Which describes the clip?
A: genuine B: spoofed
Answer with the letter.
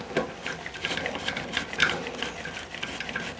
A